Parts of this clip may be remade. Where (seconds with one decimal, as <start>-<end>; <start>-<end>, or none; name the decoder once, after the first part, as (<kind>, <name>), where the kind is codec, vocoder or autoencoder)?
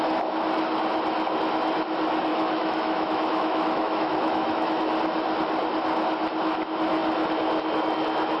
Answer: 2.3-4.9 (autoencoder, DAC-VAE)